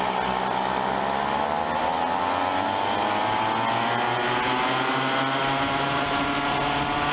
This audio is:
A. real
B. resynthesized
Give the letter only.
A